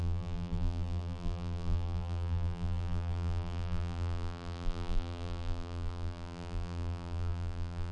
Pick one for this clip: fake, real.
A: fake